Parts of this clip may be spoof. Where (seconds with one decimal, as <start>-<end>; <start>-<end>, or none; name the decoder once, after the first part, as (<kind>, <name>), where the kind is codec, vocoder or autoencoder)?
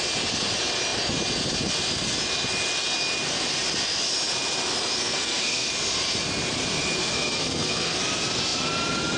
5.0-5.7 (codec, SNAC); 7.0-8.0